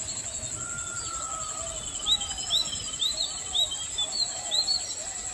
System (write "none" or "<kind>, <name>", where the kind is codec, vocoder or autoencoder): none